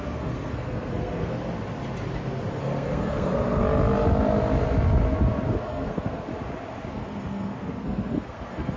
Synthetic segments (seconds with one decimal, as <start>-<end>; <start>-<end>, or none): 0.0-1.4; 2.6-3.6; 5.5-6.3; 6.9-8.8